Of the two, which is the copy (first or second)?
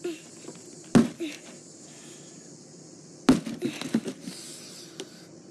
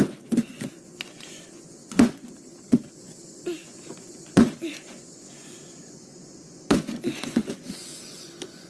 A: second